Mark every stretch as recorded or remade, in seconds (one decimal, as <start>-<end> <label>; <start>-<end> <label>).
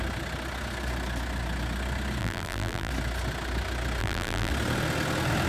0.0-2.2 recorded; 2.2-2.9 remade; 2.9-4.0 recorded; 4.0-4.5 remade; 4.5-5.5 recorded